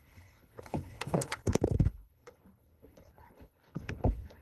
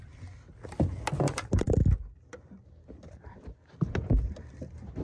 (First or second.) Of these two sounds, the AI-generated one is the first